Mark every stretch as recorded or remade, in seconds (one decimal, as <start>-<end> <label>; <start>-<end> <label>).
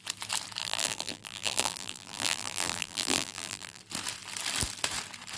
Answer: 0.0-0.6 recorded; 0.6-3.8 remade; 3.8-5.4 recorded